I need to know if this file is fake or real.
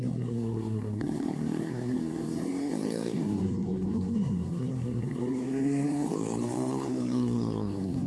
fake